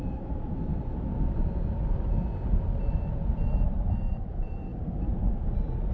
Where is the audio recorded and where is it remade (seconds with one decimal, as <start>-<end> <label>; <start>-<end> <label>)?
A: 0.0-0.7 remade; 0.7-4.2 recorded; 4.2-4.7 remade; 4.7-5.9 recorded